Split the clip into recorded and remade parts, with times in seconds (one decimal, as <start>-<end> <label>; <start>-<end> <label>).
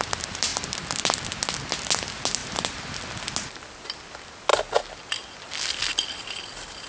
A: 0.0-0.5 recorded; 0.5-1.3 remade; 1.3-4.5 recorded; 4.5-5.0 remade; 5.0-6.9 recorded